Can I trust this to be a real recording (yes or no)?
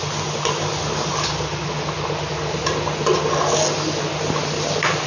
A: yes